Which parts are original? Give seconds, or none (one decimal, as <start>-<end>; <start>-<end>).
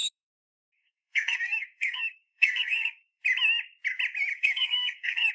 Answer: 3.2-4.3